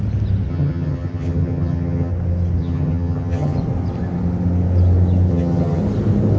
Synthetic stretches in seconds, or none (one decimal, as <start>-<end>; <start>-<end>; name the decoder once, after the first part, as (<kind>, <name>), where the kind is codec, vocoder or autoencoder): 0.5-2.1 (vocoder, HiFi-GAN); 2.6-3.6; 5.3-5.8